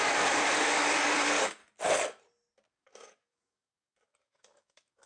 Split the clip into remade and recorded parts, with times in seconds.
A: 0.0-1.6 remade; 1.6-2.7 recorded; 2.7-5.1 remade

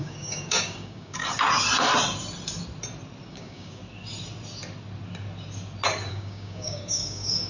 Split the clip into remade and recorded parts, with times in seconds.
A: 0.0-1.2 remade; 1.2-3.3 recorded; 3.3-3.8 remade; 3.8-6.1 recorded; 6.1-7.5 remade

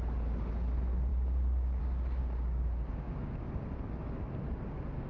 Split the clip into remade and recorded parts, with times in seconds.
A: 0.0-1.1 recorded; 1.1-1.8 remade; 1.8-2.2 recorded; 2.2-3.5 remade; 3.5-4.4 recorded; 4.4-5.1 remade

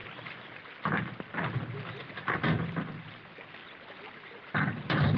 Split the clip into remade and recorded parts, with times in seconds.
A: 0.0-5.2 recorded

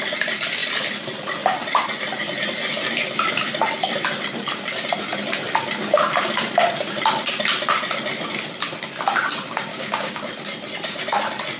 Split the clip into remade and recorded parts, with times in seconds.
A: 0.0-9.7 recorded; 9.7-10.2 remade; 10.2-11.6 recorded

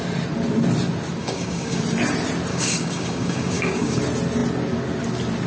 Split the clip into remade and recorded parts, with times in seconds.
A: 0.0-1.2 recorded; 1.2-1.8 remade; 1.8-2.5 recorded; 2.5-4.0 remade; 4.0-5.5 recorded

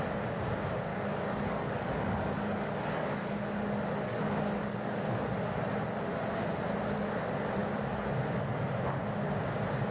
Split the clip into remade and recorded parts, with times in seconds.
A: 0.0-0.9 recorded; 0.9-5.7 remade; 5.7-9.9 recorded

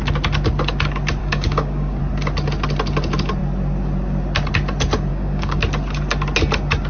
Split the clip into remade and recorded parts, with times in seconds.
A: 0.0-1.2 recorded; 1.2-2.0 remade; 2.0-5.1 recorded; 5.1-5.6 remade; 5.6-6.9 recorded